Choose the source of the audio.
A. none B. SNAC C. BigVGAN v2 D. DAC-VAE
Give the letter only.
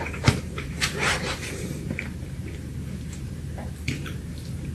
C